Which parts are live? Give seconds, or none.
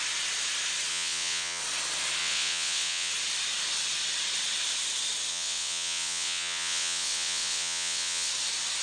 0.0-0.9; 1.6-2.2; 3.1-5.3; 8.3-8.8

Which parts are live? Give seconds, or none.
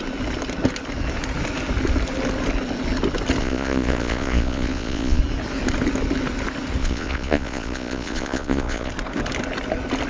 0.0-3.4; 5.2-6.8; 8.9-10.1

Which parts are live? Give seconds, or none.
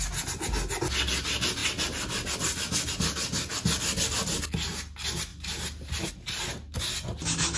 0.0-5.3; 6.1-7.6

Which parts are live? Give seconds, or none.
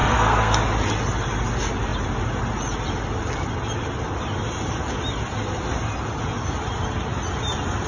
0.6-7.9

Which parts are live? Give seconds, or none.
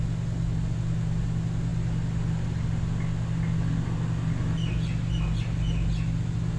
0.0-6.6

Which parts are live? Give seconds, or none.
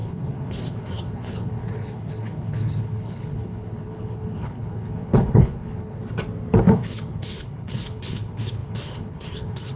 6.0-6.7